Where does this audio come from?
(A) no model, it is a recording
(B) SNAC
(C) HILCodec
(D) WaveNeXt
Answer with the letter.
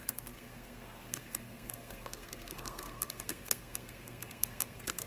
B